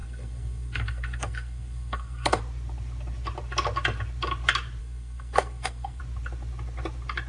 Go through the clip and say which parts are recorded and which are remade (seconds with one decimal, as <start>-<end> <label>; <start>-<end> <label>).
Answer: 0.0-2.4 remade; 2.4-4.8 recorded; 4.8-6.0 remade; 6.0-7.3 recorded